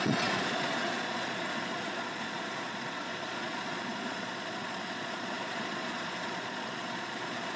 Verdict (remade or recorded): remade